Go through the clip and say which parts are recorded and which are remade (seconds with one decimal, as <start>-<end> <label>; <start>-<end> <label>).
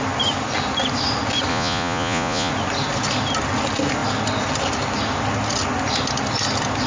0.0-1.5 recorded; 1.5-2.5 remade; 2.5-6.9 recorded